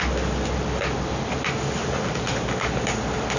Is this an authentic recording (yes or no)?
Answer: yes